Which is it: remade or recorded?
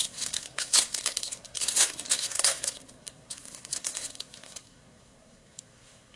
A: remade